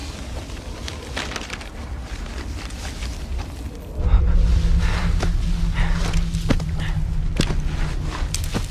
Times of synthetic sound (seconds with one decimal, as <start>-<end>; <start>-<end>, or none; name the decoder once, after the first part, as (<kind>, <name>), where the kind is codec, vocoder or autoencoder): none